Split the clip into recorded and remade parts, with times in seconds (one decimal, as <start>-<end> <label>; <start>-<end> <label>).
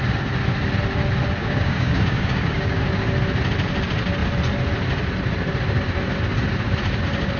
0.0-1.4 recorded; 1.4-2.8 remade; 2.8-7.4 recorded